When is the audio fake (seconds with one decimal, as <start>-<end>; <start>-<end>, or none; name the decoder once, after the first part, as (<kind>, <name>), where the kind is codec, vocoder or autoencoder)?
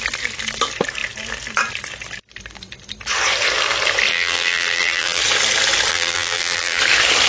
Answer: 4.1-5.2 (vocoder, BigVGAN v2); 5.9-6.8